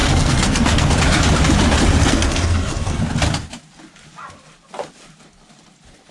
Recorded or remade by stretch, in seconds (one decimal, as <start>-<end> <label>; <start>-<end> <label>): 0.0-0.9 remade; 0.9-2.0 recorded; 2.0-3.0 remade; 3.0-6.1 recorded